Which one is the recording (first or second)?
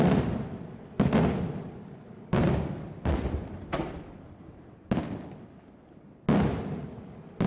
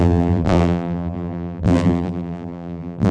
first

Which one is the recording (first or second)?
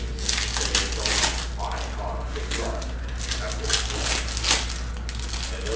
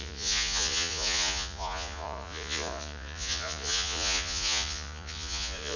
first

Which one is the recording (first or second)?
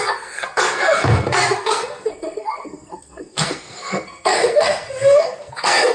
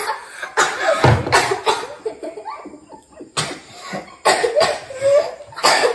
second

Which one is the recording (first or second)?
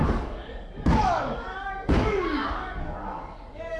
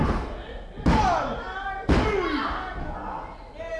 second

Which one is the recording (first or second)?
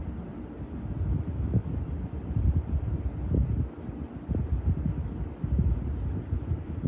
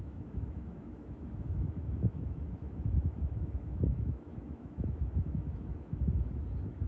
first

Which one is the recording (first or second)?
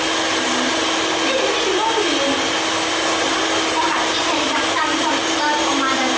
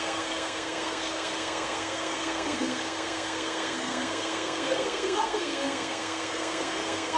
first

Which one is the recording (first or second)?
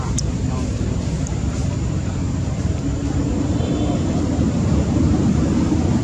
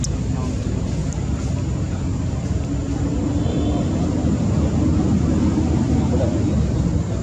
second